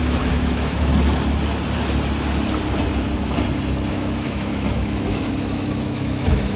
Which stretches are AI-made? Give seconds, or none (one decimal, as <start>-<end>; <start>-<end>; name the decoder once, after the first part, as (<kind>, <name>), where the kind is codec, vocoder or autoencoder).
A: 0.0-0.9 (autoencoder, DAC-VAE); 3.9-6.6